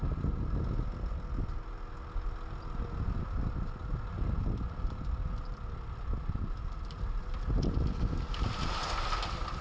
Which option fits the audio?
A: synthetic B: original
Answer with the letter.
B